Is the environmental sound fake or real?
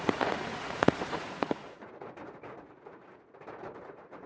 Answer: fake